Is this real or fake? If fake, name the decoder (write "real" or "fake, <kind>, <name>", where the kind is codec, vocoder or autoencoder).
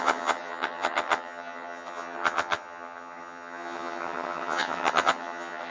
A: fake, vocoder, HiFi-GAN